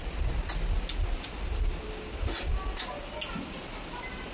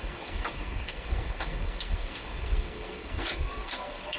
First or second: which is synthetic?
second